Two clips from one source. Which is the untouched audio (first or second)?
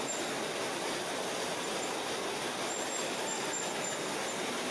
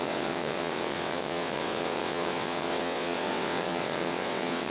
first